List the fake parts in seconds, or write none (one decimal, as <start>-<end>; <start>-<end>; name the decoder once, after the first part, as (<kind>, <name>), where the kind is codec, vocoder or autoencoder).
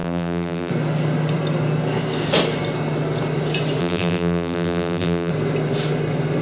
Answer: 0.0-0.7 (vocoder, BigVGAN v2); 3.8-5.3